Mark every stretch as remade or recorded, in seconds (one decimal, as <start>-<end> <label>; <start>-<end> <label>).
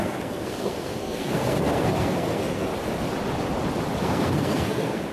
0.0-2.7 remade; 2.7-4.0 recorded; 4.0-5.1 remade